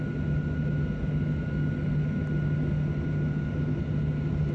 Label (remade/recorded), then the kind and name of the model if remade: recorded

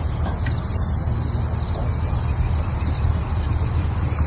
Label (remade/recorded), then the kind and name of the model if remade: recorded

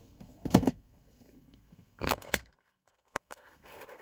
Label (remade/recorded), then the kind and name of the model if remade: remade, codec, SNAC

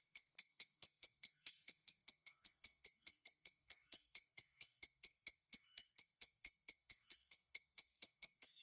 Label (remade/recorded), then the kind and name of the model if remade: remade, codec, SNAC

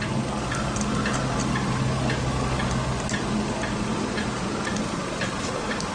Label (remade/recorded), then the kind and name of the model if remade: recorded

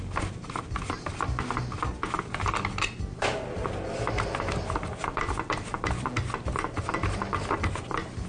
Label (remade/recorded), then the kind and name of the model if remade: recorded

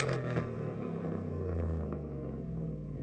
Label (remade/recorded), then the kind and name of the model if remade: remade, codec, SNAC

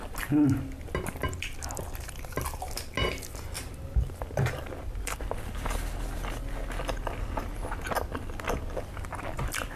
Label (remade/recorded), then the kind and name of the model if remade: recorded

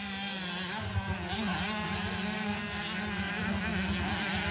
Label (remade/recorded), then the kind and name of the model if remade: recorded